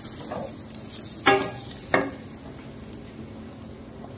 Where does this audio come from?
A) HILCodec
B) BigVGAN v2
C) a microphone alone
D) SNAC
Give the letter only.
C